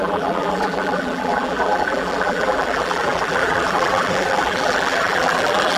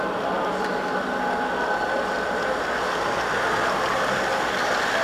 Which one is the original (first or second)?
second